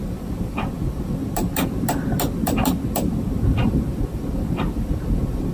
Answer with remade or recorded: recorded